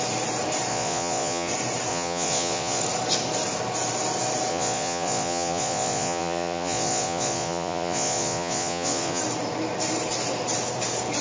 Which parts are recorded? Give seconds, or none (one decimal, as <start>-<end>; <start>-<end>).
0.0-0.7; 1.5-1.9; 2.8-4.5; 9.2-11.2